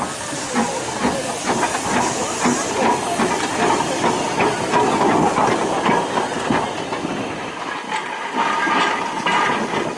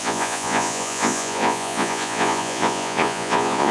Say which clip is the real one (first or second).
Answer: first